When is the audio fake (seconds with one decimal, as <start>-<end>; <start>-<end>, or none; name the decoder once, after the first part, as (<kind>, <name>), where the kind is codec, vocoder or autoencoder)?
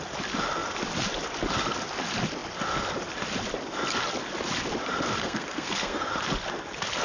5.2-6.1 (codec, SNAC)